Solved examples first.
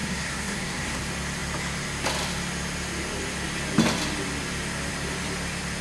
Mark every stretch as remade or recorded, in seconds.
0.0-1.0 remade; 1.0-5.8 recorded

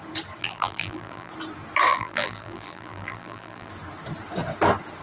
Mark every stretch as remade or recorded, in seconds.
0.0-0.4 recorded; 0.4-1.3 remade; 1.3-1.9 recorded; 1.9-3.7 remade; 3.7-5.0 recorded

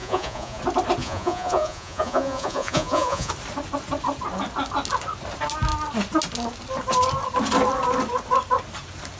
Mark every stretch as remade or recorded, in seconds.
0.0-0.6 remade; 0.6-1.0 recorded; 1.0-3.3 remade; 3.3-9.2 recorded

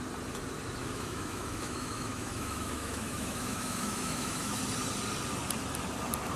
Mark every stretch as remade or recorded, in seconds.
0.0-0.8 recorded; 0.8-4.6 remade; 4.6-6.4 recorded

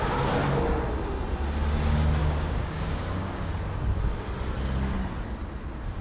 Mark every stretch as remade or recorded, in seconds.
0.0-2.2 recorded; 2.2-3.6 remade; 3.6-6.0 recorded

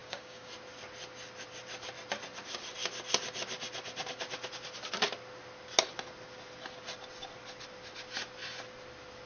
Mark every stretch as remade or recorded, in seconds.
0.0-0.5 remade; 0.5-9.3 recorded

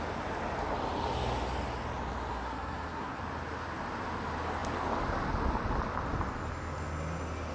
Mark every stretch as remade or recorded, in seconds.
0.0-2.3 recorded; 2.3-3.2 remade; 3.2-7.5 recorded